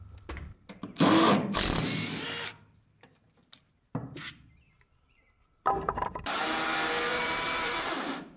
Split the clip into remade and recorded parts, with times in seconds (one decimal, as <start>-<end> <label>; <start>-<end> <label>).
0.0-2.5 recorded; 2.5-6.6 remade; 6.6-7.1 recorded; 7.1-8.0 remade; 8.0-8.4 recorded